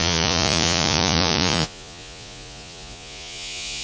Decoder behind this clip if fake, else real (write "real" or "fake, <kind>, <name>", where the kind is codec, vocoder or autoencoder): fake, vocoder, Vocos